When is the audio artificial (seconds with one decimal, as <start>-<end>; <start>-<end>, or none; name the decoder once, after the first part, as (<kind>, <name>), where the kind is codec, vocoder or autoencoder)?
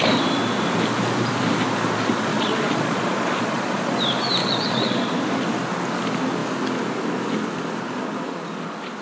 2.3-3.9 (vocoder, Vocos); 4.4-5.2